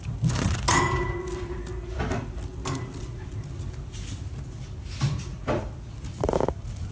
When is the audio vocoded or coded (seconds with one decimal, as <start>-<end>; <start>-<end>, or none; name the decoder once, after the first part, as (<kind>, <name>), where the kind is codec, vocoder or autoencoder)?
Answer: none

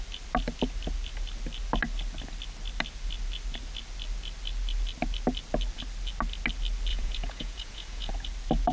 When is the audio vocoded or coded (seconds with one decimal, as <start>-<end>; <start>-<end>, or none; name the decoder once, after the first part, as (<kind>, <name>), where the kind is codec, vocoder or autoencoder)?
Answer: 6.9-8.1 (vocoder, Vocos)

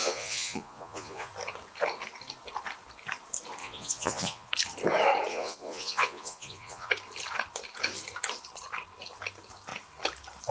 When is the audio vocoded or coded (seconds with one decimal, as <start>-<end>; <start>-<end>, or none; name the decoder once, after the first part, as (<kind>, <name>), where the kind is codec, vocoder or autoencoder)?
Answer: 0.0-1.3 (vocoder, Vocos); 3.6-4.5; 5.3-6.9

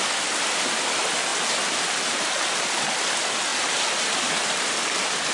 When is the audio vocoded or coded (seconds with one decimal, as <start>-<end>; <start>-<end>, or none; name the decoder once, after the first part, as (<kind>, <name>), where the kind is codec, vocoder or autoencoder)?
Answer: none

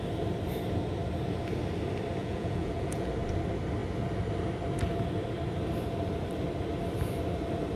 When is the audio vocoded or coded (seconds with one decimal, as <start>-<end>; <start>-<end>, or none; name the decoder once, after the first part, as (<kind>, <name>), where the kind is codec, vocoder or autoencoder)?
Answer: 2.2-3.1 (vocoder, Vocos)

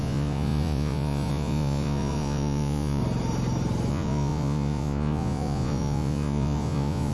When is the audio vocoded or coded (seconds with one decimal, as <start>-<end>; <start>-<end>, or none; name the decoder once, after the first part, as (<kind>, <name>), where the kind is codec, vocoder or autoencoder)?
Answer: 0.0-3.0 (vocoder, Vocos); 3.9-7.1

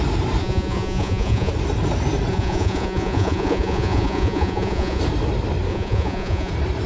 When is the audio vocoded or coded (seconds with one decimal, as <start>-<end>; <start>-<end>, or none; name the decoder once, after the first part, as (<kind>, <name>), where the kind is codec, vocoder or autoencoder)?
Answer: 0.4-1.5 (vocoder, Vocos); 2.3-5.0; 5.7-6.5